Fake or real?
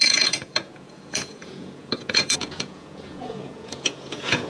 fake